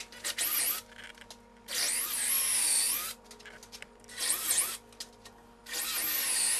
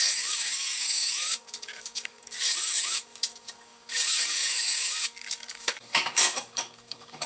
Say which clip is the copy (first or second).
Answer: second